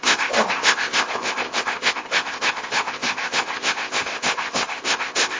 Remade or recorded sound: remade